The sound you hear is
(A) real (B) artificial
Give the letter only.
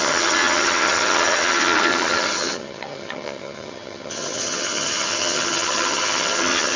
B